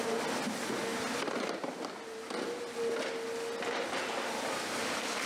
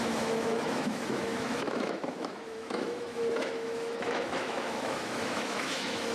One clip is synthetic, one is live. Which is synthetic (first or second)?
second